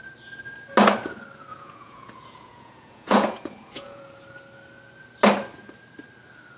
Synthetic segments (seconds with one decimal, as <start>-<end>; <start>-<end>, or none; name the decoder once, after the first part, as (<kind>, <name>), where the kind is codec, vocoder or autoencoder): 1.5-4.0 (vocoder, Vocos)